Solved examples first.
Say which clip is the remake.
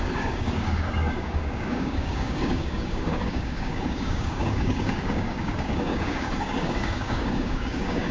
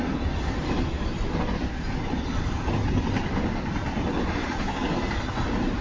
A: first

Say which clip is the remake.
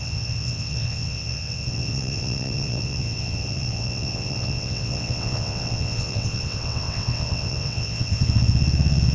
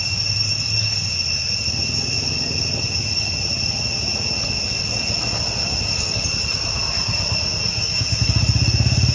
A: first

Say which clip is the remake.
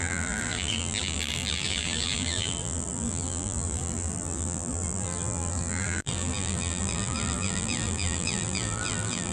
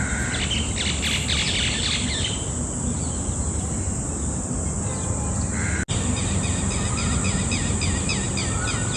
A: first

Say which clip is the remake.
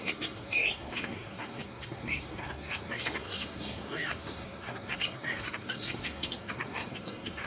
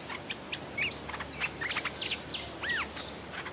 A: first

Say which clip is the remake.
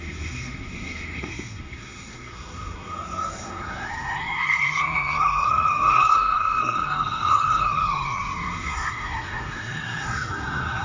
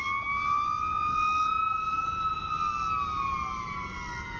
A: first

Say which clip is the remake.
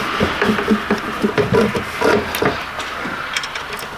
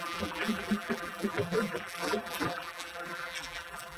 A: second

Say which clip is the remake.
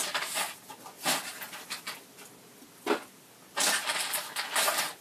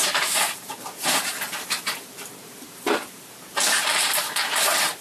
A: second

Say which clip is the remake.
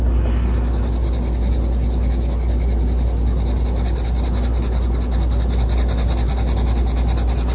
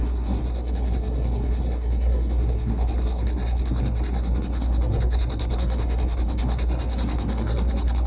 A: second